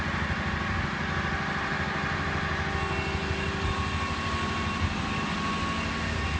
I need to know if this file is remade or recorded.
recorded